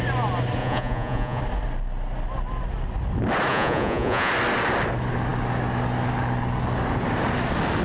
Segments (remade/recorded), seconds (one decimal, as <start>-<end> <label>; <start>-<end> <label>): 0.0-0.6 recorded; 0.6-1.4 remade; 1.4-3.5 recorded; 3.5-4.3 remade; 4.3-7.8 recorded